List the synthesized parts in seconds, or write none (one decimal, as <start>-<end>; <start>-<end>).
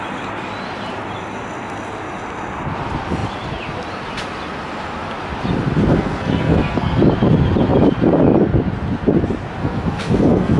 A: 5.9-7.0; 9.6-10.6